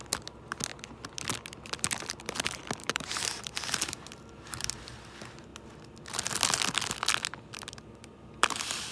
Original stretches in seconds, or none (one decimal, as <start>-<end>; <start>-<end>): 0.0-2.8; 4.0-8.9

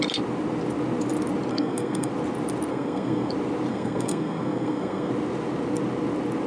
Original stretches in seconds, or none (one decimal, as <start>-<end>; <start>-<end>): 0.0-1.5; 2.1-2.7; 3.3-3.7; 5.1-6.5